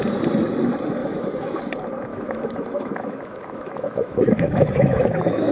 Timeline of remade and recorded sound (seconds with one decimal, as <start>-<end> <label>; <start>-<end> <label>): 0.0-1.0 recorded; 1.0-1.6 remade; 1.6-2.1 recorded; 2.1-5.5 remade